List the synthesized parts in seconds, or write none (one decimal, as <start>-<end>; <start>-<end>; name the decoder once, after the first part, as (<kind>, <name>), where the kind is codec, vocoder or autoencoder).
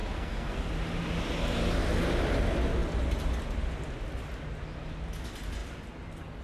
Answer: 0.0-0.7 (codec, SNAC)